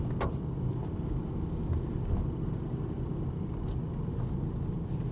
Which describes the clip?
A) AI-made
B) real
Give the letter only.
B